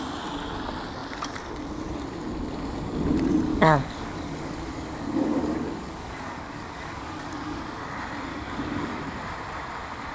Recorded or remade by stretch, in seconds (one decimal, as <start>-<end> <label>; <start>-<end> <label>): 0.0-3.5 recorded; 3.5-7.6 remade; 7.6-8.3 recorded; 8.3-9.0 remade; 9.0-10.1 recorded